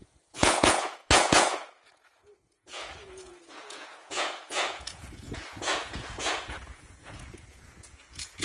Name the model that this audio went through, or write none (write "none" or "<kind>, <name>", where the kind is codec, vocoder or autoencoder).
vocoder, Vocos